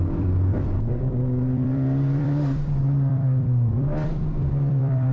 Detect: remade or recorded remade